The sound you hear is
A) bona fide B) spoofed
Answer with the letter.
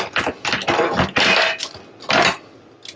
A